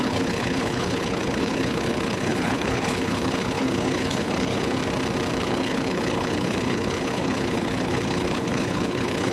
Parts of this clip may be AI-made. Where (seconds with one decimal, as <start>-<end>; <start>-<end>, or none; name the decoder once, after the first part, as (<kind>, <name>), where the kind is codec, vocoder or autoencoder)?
0.0-4.8 (codec, HILCodec); 5.4-9.3